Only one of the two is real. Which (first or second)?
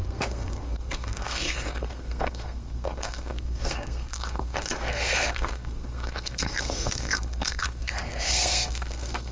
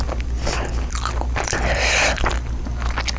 second